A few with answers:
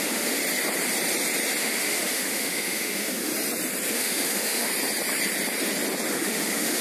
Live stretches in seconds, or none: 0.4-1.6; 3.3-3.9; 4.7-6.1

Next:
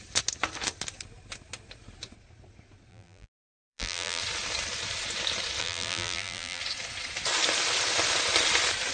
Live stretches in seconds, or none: 0.0-2.9; 4.2-5.6; 6.6-8.9

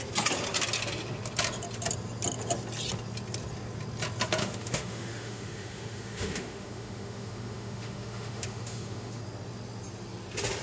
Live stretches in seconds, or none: 0.0-4.4; 9.2-10.6

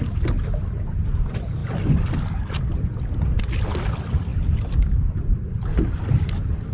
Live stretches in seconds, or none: 0.0-6.7